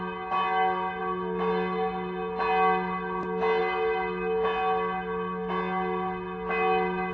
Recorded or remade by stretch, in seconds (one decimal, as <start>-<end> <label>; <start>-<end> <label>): 0.0-7.1 recorded